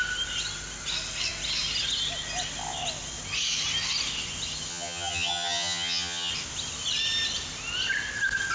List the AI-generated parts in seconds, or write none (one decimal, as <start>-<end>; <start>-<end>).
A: 4.7-6.3